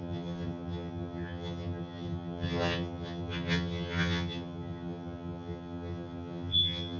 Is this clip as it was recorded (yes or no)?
no